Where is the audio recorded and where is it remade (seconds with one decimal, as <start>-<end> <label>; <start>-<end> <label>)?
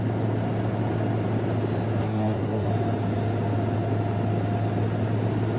0.0-2.0 recorded; 2.0-2.7 remade; 2.7-5.6 recorded